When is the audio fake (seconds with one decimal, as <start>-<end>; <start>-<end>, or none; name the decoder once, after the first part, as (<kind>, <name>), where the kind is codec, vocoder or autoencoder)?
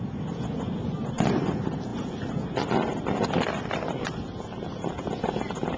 none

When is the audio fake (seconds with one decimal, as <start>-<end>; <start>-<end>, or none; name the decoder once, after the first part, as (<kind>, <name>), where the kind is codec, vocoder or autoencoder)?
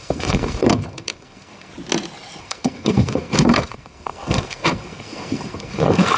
0.0-1.7 (codec, SNAC); 2.4-6.2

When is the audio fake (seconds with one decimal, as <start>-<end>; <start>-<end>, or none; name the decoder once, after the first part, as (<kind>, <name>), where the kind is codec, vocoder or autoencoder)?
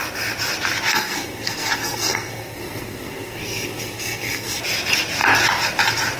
0.9-4.6 (codec, SNAC)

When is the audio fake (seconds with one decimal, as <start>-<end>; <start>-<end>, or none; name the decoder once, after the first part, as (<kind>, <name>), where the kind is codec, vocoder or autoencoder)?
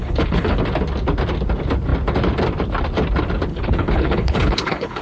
0.0-0.6 (codec, HILCodec); 3.5-5.0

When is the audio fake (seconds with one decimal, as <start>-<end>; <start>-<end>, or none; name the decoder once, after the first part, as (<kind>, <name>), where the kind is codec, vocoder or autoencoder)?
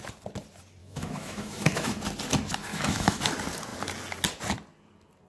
0.8-2.0 (autoencoder, DAC-VAE); 2.7-3.2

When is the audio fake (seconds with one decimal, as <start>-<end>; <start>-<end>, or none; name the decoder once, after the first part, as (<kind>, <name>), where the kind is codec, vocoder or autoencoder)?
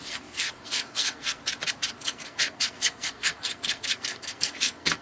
0.0-1.4 (codec, SNAC); 1.9-5.0